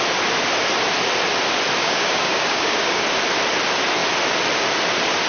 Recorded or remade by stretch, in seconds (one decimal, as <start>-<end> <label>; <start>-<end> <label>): 0.0-1.8 recorded; 1.8-3.0 remade; 3.0-5.3 recorded

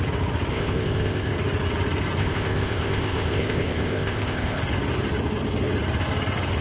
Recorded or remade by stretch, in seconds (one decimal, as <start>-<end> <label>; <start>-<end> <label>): 0.0-0.5 recorded; 0.5-1.3 remade; 1.3-2.2 recorded; 2.2-4.6 remade; 4.6-6.6 recorded

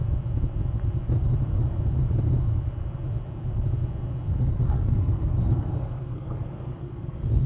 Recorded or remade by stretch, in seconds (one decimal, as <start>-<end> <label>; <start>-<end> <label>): 0.0-4.4 recorded; 4.4-7.5 remade

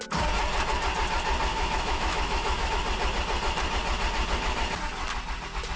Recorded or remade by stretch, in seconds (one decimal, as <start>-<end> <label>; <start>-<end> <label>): 0.0-1.5 recorded; 1.5-2.7 remade; 2.7-5.8 recorded

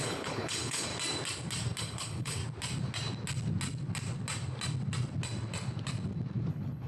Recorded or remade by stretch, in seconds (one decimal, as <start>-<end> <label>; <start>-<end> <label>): 0.0-0.9 remade; 0.9-1.8 recorded; 1.8-2.4 remade; 2.4-6.5 recorded; 6.5-6.9 remade

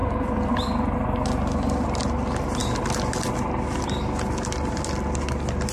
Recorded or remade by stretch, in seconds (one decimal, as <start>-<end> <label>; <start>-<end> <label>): 0.0-0.5 remade; 0.5-5.7 recorded